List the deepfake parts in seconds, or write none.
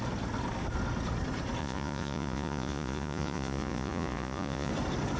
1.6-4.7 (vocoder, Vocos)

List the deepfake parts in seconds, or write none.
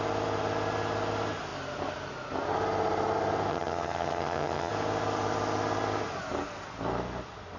3.5-4.7 (vocoder, HiFi-GAN)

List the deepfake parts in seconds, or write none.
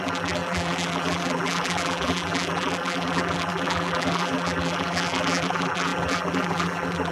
0.0-7.1 (vocoder, BigVGAN v2)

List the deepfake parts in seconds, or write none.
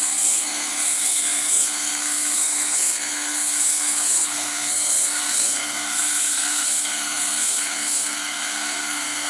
0.0-9.3 (codec, SNAC)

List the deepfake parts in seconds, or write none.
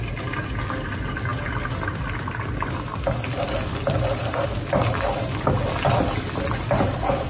none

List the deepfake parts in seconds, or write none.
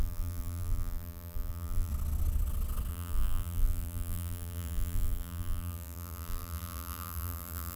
0.0-1.9 (vocoder, BigVGAN v2); 2.9-7.8